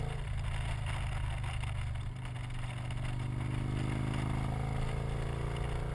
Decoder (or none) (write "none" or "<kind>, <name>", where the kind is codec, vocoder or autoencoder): none